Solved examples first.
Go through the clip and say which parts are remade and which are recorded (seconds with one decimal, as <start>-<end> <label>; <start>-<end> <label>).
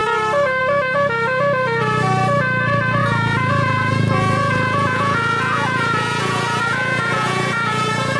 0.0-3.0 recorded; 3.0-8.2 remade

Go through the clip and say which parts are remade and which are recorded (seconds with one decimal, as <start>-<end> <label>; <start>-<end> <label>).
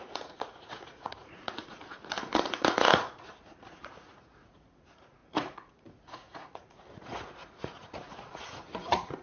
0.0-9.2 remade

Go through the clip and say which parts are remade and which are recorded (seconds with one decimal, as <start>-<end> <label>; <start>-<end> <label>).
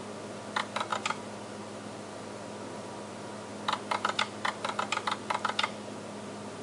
0.0-6.6 recorded